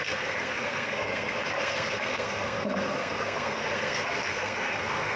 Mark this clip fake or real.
fake